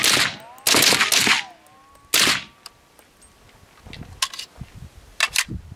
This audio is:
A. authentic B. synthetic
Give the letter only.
A